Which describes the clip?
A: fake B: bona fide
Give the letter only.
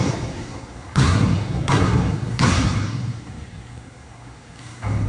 A